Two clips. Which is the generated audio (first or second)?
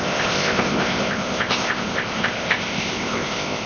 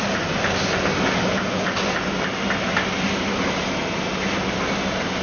first